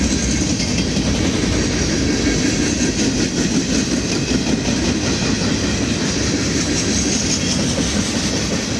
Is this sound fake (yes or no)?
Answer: no